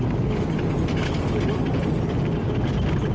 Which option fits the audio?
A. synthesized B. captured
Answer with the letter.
B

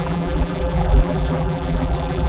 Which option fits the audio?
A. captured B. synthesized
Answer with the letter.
B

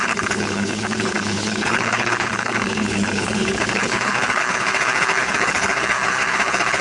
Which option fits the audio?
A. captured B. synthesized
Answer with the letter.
B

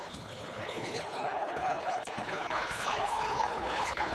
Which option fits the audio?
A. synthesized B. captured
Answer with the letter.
A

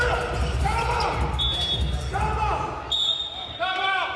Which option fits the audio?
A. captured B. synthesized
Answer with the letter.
A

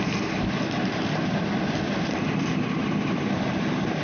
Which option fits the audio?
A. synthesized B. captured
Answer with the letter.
A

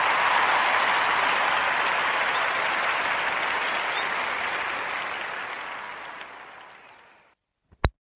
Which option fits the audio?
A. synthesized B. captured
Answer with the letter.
B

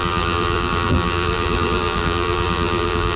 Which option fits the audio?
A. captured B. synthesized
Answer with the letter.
B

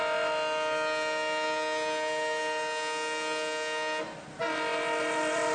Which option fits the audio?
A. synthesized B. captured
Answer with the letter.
B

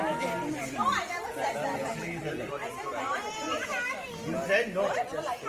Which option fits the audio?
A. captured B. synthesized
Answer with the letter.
A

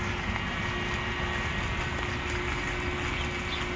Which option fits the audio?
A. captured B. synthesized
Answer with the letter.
A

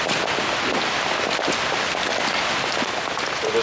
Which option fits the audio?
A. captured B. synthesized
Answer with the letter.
A